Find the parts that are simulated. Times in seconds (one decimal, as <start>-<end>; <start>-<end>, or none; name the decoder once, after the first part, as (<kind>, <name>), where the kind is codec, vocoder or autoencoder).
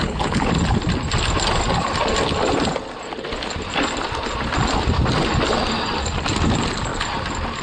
0.0-0.5 (codec, HILCodec)